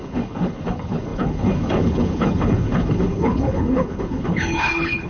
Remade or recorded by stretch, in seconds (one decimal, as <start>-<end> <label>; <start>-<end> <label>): 0.0-5.1 remade